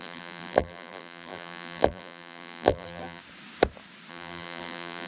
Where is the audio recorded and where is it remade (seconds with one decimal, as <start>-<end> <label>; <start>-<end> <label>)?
0.0-3.2 remade; 3.2-4.1 recorded; 4.1-5.1 remade